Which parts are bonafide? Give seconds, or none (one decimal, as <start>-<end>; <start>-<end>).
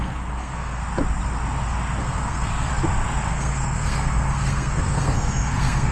0.8-2.0; 2.7-3.3